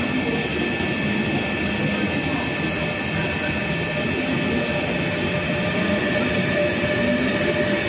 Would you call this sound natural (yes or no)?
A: yes